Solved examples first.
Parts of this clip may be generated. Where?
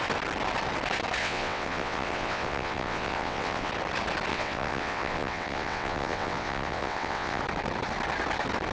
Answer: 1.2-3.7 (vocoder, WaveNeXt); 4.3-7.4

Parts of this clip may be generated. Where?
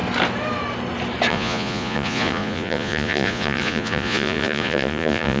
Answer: 1.3-5.4 (vocoder, Vocos)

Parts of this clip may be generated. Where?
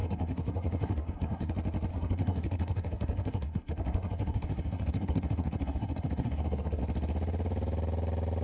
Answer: 0.0-1.5 (codec, SNAC); 1.9-6.8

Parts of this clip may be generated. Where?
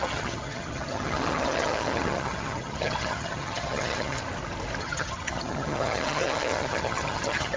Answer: 0.0-4.2 (vocoder, HiFi-GAN); 4.8-7.6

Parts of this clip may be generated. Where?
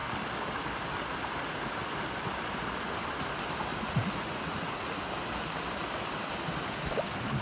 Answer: 3.7-5.0 (vocoder, Vocos)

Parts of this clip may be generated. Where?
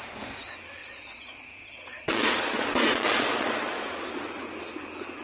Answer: 0.8-3.9 (vocoder, Vocos)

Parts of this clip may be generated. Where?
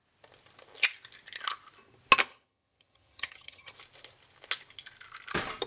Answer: 2.3-3.7 (vocoder, HiFi-GAN)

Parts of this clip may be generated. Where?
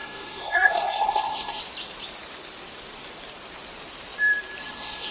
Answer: 0.0-1.6 (codec, SNAC); 4.6-5.1